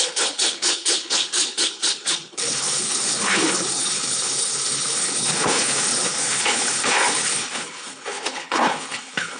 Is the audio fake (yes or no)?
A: yes